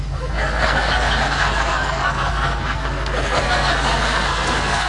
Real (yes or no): no